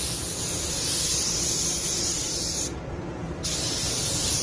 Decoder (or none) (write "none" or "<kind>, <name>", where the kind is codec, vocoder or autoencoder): none